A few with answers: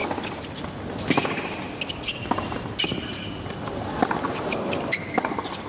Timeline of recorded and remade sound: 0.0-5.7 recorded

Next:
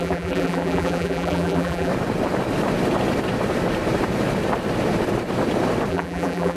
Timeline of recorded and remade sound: 0.0-1.9 remade; 1.9-5.9 recorded; 5.9-6.6 remade

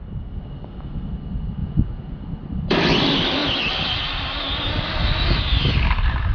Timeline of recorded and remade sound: 0.0-1.6 recorded; 1.6-2.3 remade; 2.3-6.3 recorded

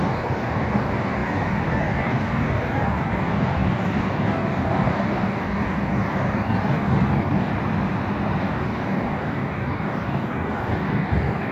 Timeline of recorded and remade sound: 0.0-7.5 remade; 7.5-8.4 recorded; 8.4-11.5 remade

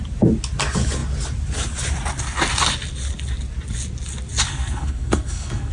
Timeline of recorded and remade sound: 0.0-4.5 recorded; 4.5-5.7 remade